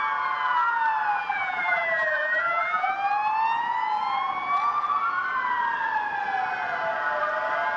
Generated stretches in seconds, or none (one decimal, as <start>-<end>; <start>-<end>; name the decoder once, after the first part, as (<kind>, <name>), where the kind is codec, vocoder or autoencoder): 1.2-2.9 (vocoder, BigVGAN v2)